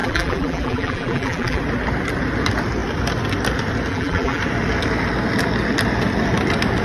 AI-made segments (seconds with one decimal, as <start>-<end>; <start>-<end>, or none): 0.0-1.6; 3.9-4.4

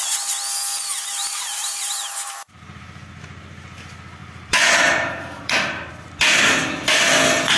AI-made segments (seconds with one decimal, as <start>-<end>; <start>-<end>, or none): 1.2-2.8; 4.2-5.9

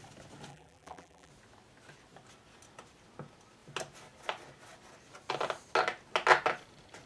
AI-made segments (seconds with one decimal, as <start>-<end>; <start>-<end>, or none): 0.5-1.3

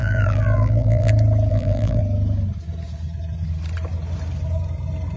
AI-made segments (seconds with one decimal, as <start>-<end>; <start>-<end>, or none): 0.0-1.1; 1.5-2.0

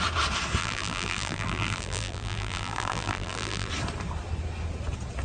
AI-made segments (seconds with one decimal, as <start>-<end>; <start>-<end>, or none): 0.6-3.7

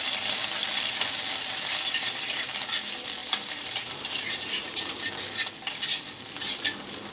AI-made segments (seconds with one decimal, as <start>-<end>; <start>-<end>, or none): 3.2-5.1

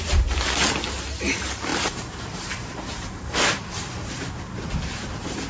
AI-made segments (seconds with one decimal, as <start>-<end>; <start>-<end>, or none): 1.7-3.6

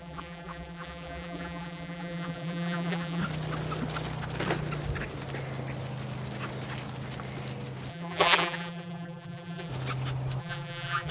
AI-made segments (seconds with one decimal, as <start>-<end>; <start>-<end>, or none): 0.0-3.2; 7.9-9.7; 10.4-11.1